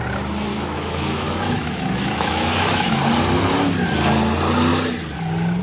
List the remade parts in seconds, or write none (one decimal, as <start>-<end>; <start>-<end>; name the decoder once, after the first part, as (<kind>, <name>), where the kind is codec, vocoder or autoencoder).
0.5-3.0 (autoencoder, DAC-VAE)